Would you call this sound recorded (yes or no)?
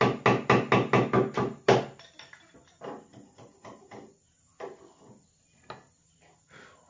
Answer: yes